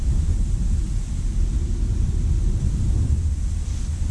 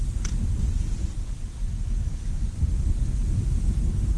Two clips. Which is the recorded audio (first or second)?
second